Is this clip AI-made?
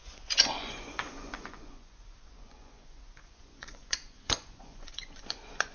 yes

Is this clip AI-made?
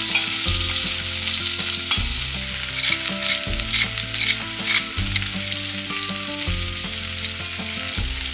no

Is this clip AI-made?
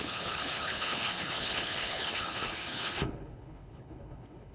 yes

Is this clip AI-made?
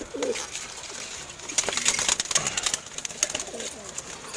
no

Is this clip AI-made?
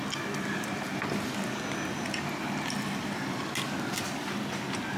no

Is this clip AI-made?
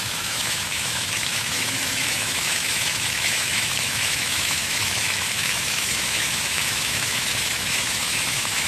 yes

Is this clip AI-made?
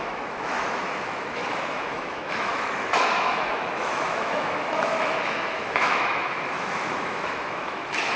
yes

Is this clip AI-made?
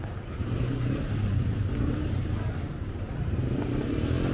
no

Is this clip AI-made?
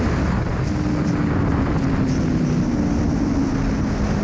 no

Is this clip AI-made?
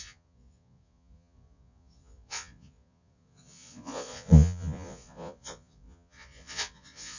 yes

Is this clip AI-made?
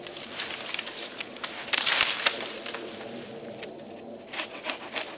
no